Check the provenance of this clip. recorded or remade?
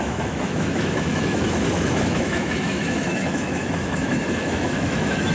remade